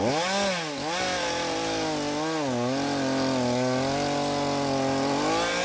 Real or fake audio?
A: real